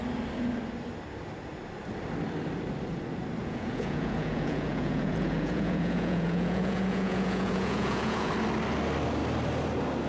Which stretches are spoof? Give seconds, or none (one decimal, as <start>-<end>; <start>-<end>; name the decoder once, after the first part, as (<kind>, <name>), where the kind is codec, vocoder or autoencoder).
3.4-8.3 (vocoder, Vocos)